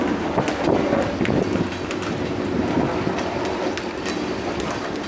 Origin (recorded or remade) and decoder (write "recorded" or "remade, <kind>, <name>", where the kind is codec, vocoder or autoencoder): recorded